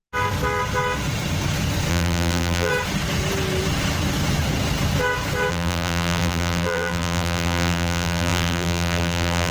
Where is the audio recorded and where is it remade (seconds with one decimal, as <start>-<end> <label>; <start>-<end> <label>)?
0.0-1.9 recorded; 1.9-2.7 remade; 2.7-5.5 recorded; 5.5-9.5 remade